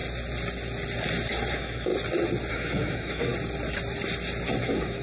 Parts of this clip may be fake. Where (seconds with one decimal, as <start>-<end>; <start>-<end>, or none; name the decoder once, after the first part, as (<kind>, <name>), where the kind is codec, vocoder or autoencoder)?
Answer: 1.5-1.9 (autoencoder, DAC-VAE); 2.5-3.3; 4.6-5.0